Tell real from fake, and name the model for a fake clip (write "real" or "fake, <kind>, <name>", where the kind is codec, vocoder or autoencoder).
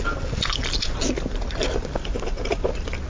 real